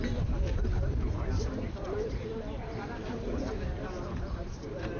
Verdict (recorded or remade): remade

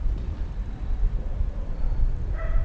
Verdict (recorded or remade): remade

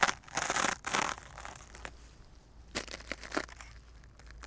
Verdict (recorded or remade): recorded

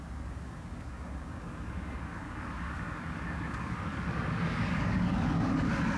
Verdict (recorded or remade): remade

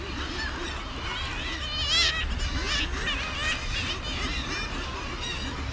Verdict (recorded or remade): recorded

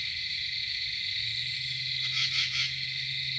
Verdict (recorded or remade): remade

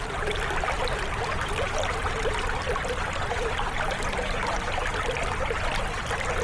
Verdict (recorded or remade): recorded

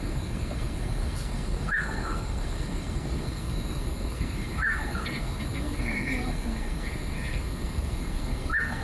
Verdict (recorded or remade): remade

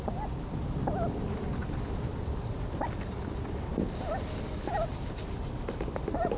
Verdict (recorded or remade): recorded